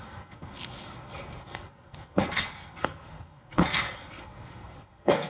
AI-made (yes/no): yes